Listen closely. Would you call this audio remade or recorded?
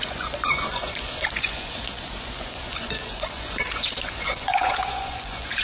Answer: remade